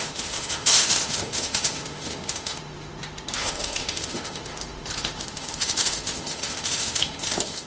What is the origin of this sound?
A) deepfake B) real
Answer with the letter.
A